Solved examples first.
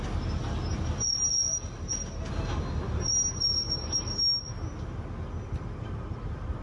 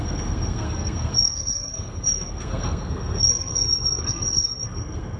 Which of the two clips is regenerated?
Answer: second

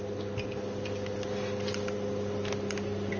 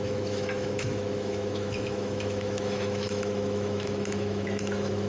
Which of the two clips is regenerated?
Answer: second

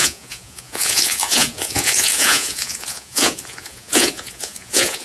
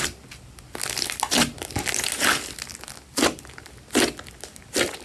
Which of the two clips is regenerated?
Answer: first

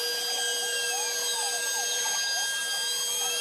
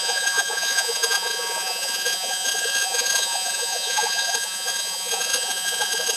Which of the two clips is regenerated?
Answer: second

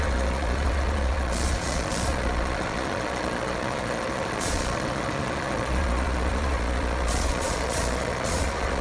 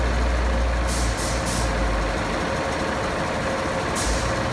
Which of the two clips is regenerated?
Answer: first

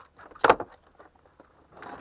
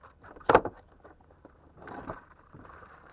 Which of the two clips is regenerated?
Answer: second